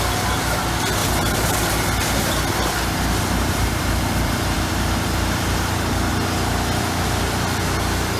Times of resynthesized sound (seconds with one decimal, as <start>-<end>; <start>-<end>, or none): 0.0-1.0; 3.0-6.1; 6.8-8.2